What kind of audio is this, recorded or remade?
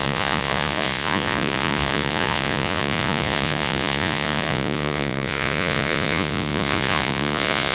remade